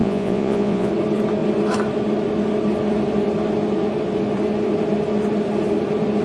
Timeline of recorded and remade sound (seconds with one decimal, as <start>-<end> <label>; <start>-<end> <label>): 0.0-0.9 remade; 0.9-6.2 recorded